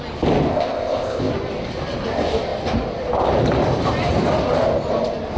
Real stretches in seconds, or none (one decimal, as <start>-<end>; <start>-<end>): 0.0-0.5; 1.3-5.4